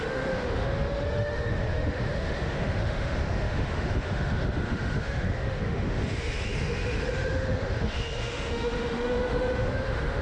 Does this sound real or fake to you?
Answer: fake